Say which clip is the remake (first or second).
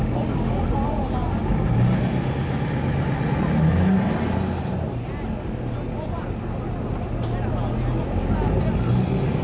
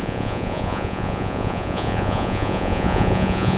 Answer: second